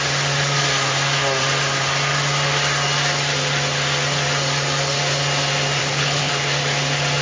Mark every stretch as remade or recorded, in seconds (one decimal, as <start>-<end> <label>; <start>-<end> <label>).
0.0-5.8 recorded; 5.8-6.3 remade; 6.3-7.2 recorded